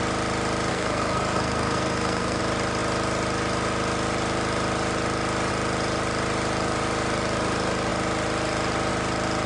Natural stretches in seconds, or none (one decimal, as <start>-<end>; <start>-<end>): 0.0-0.7; 2.4-9.5